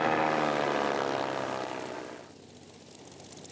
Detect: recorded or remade recorded